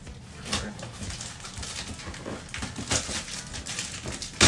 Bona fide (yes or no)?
yes